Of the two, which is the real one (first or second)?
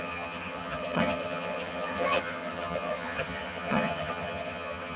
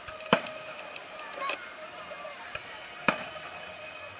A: second